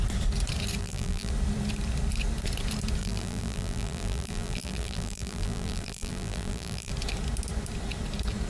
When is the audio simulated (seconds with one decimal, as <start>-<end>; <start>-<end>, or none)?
0.8-1.3; 3.0-6.9